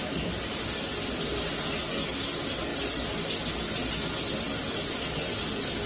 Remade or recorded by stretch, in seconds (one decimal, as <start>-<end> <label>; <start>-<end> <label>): 0.0-5.9 recorded